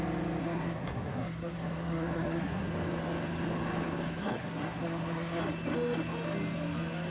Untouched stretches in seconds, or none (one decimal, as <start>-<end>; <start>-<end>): 0.0-0.4; 2.7-4.2; 5.4-7.1